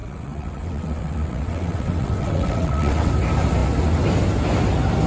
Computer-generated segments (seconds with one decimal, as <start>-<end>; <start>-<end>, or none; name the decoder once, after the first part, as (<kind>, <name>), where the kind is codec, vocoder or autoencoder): 0.0-3.1 (vocoder, WaveNeXt)